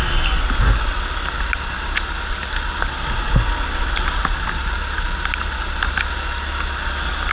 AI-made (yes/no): no